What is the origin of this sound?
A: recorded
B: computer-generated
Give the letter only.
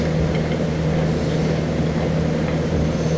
A